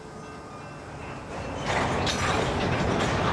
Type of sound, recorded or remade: recorded